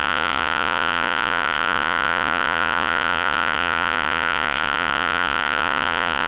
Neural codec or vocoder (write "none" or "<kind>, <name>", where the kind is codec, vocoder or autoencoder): vocoder, Vocos